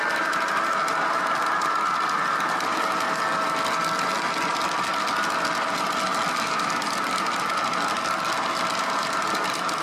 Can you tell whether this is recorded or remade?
recorded